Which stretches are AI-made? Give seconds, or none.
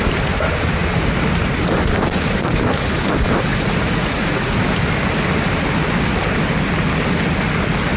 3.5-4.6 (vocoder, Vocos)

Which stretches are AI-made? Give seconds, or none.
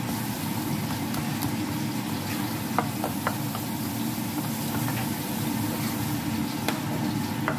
none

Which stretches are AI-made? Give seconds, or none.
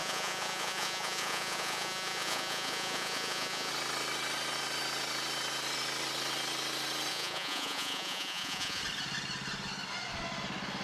0.0-3.7 (vocoder, Vocos); 7.1-8.8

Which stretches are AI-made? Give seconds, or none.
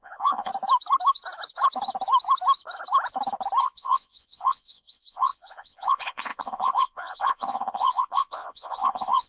0.0-0.5 (vocoder, Vocos); 3.6-9.3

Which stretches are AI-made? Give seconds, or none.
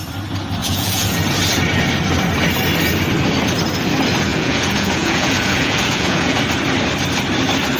0.6-1.2 (vocoder, Vocos); 4.3-6.4